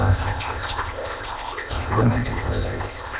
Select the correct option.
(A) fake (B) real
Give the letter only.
A